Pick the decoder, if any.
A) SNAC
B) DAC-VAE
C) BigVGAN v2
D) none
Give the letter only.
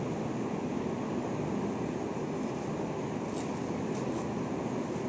D